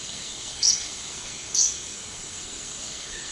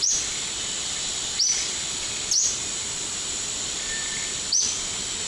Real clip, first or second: second